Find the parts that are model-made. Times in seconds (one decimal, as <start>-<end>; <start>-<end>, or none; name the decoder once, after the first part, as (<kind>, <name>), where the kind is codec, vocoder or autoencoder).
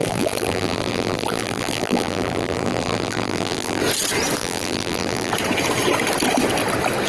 0.0-3.8 (vocoder, BigVGAN v2); 4.4-5.3